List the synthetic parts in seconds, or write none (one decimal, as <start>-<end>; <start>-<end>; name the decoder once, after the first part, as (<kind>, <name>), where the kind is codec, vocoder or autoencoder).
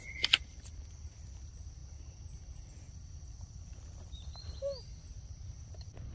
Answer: 0.0-1.8 (vocoder, BigVGAN v2); 2.4-6.1